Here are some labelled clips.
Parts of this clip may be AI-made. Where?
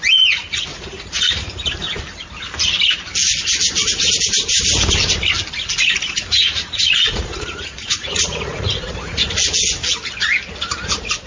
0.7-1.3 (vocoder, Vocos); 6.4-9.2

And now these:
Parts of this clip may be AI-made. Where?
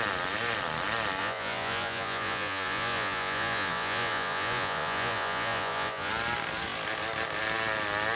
1.2-6.1 (vocoder, Vocos)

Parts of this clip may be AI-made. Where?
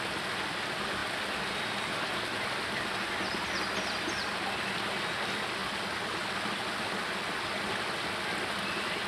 none